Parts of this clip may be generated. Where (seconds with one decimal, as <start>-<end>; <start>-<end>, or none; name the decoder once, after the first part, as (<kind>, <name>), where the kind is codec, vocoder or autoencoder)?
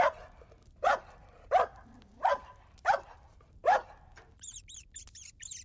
none